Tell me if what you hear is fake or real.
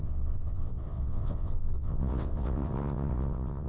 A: fake